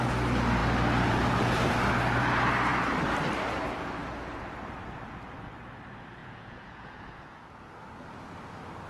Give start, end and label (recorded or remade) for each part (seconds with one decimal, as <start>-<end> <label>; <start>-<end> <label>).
0.0-6.2 recorded; 6.2-7.7 remade; 7.7-8.9 recorded